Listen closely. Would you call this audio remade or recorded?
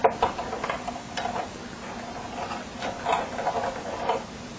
recorded